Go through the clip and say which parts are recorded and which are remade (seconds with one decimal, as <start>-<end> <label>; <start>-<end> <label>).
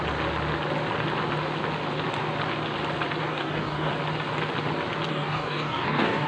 0.0-3.3 recorded; 3.3-3.9 remade; 3.9-5.1 recorded; 5.1-6.3 remade